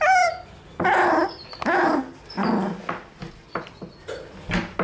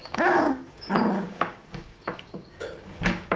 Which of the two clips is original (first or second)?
first